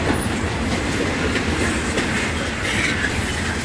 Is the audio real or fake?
real